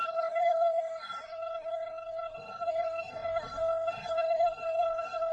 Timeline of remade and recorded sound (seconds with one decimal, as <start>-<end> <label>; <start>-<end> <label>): 0.0-5.3 remade